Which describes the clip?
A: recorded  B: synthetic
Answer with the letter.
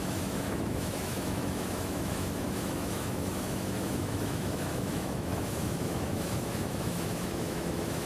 B